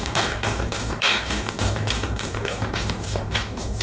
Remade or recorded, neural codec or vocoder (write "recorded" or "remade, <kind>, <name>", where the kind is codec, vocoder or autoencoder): remade, codec, DAC